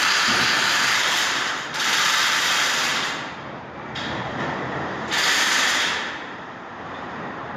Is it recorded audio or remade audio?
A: remade